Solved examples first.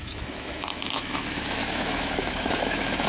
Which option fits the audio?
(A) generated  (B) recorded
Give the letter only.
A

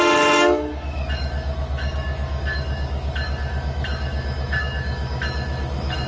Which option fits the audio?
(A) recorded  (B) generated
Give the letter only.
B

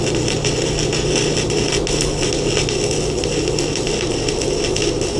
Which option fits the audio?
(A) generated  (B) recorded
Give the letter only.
B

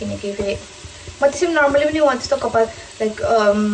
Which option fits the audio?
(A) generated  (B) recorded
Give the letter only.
B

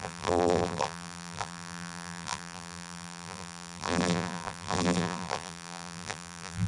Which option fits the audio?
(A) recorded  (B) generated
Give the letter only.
B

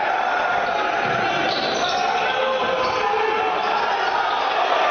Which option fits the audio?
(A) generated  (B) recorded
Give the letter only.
B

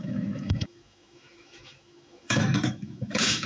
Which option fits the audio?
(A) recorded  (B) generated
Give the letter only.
B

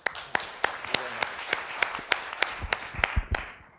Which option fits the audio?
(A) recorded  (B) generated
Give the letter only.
A